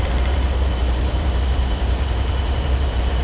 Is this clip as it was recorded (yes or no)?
no